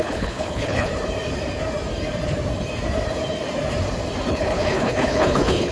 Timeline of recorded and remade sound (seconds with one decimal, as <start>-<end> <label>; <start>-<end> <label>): 0.0-0.9 remade; 0.9-4.3 recorded; 4.3-5.7 remade